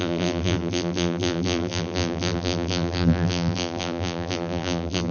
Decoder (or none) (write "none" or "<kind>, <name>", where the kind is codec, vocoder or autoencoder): vocoder, BigVGAN v2